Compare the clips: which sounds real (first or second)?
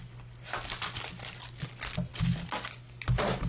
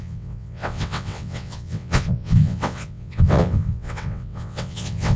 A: first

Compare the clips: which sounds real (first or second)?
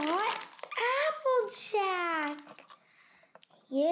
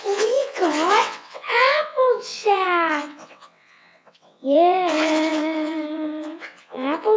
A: first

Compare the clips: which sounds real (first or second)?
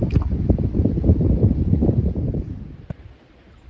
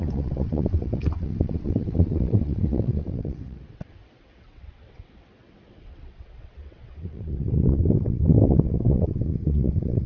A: first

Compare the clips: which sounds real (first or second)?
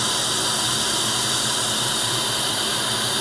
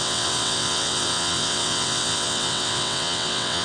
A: first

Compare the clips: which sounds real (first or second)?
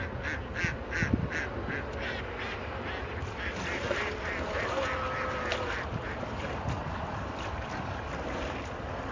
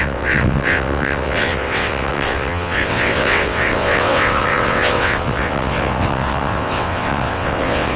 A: first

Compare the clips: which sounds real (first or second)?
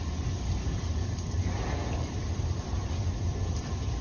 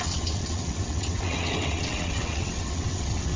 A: first